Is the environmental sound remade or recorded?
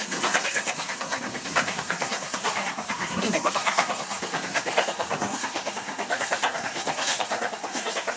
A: remade